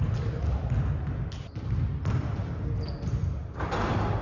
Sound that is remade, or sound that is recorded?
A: recorded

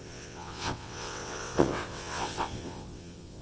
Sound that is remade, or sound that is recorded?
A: remade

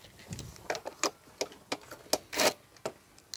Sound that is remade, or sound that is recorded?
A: recorded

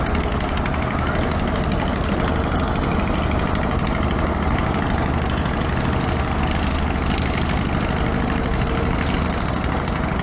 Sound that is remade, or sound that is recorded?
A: recorded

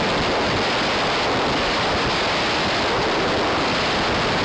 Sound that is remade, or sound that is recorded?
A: recorded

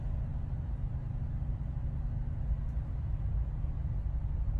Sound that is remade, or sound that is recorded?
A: recorded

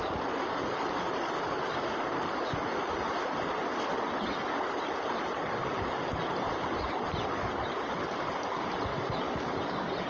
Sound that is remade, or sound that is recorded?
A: recorded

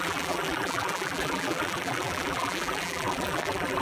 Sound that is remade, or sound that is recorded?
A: remade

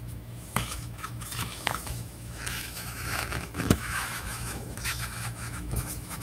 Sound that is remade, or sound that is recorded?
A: remade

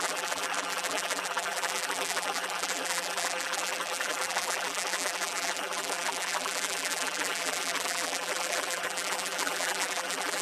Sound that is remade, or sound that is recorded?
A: remade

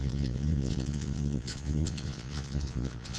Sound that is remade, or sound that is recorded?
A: remade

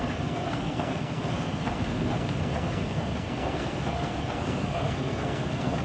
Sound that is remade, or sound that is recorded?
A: remade